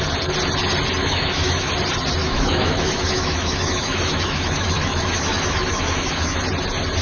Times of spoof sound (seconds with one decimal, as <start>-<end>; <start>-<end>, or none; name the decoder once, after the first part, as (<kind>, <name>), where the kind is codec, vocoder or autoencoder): 1.0-1.7 (autoencoder, DAC-VAE); 2.2-6.4